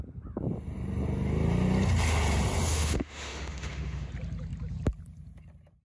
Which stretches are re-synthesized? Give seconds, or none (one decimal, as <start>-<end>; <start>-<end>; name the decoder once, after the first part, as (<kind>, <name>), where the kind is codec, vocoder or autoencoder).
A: 2.7-4.1 (autoencoder, DAC-VAE)